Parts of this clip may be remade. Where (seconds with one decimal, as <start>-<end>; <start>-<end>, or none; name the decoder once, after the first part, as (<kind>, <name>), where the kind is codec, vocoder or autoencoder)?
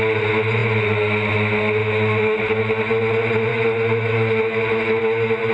1.8-2.4 (autoencoder, DAC-VAE); 3.5-5.0